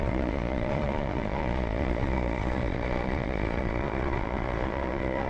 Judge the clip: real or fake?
fake